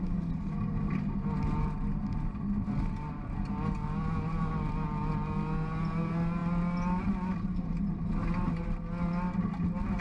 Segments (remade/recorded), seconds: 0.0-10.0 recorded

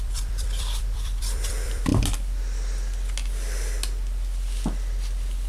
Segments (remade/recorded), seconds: 0.0-1.9 remade; 1.9-5.5 recorded

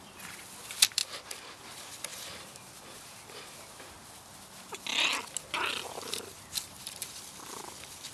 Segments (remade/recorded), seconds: 0.0-1.0 remade; 1.0-1.6 recorded; 1.6-2.1 remade; 2.1-5.8 recorded; 5.8-8.1 remade

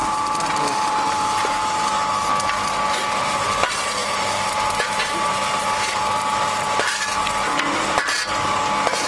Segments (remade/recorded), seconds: 0.0-2.3 remade; 2.3-4.0 recorded; 4.0-7.2 remade; 7.2-9.1 recorded

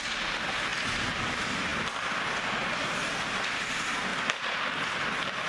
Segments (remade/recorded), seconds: 0.0-5.5 recorded

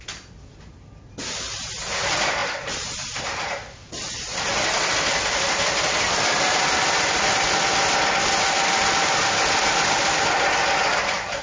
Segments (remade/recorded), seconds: 0.0-2.4 recorded; 2.4-5.4 remade; 5.4-11.4 recorded

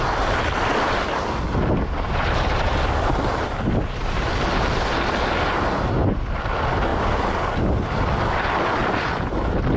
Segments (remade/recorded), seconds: 0.0-9.8 recorded